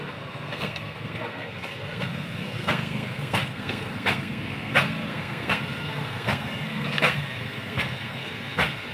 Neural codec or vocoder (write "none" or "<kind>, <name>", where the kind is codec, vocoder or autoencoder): codec, SNAC